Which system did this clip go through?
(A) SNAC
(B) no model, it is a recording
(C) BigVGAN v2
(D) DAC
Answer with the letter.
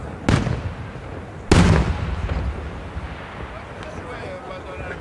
B